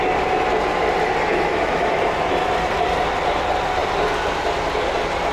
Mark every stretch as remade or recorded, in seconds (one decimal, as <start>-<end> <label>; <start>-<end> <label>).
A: 0.0-1.3 recorded; 1.3-1.9 remade; 1.9-5.3 recorded